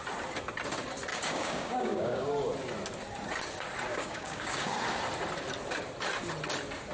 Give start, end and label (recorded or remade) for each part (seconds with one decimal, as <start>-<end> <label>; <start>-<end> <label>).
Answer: 0.0-1.1 recorded; 1.1-2.3 remade; 2.3-3.9 recorded; 3.9-4.7 remade; 4.7-6.9 recorded